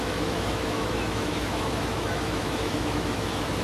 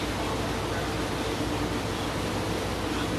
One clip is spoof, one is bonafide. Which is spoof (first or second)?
first